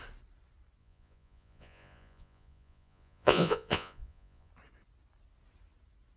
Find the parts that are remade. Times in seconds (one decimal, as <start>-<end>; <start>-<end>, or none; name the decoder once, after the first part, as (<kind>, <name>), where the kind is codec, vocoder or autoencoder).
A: 0.8-4.5 (vocoder, Vocos)